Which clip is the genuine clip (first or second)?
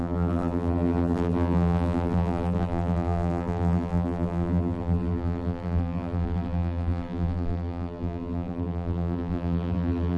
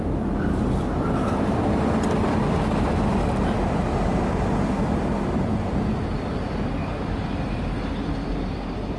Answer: second